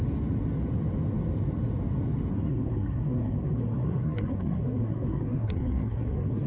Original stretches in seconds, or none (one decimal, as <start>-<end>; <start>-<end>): 0.0-2.3